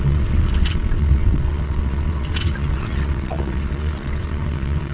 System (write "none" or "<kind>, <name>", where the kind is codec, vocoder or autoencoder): vocoder, WaveNeXt